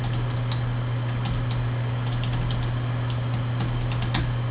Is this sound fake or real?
real